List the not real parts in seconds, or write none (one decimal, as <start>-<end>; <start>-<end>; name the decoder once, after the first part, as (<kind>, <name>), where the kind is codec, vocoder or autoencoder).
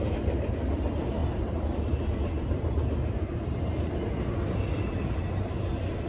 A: none